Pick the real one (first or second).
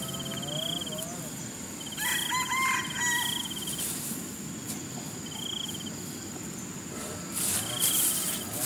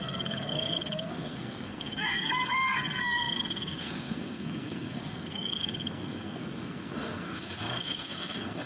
first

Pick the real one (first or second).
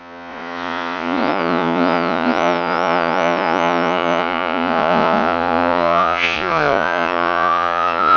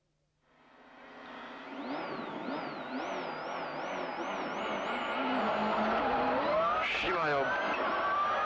second